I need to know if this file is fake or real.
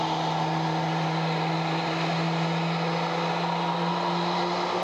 real